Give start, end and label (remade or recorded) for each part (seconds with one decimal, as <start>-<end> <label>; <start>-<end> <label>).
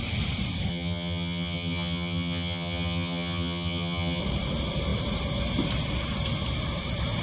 0.0-0.7 recorded; 0.7-4.2 remade; 4.2-7.2 recorded